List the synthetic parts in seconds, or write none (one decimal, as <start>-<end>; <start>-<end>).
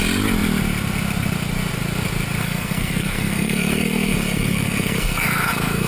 2.4-5.9